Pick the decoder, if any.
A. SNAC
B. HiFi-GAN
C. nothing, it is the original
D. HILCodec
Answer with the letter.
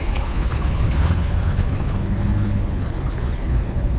D